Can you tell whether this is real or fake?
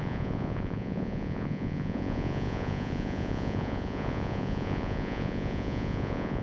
fake